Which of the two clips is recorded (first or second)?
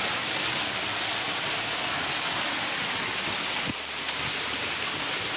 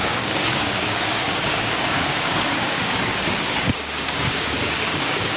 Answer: first